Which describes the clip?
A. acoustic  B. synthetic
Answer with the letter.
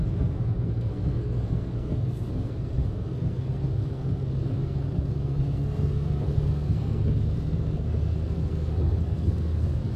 B